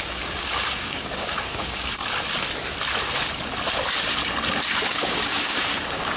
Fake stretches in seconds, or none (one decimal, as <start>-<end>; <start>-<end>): 0.0-2.0; 4.8-6.2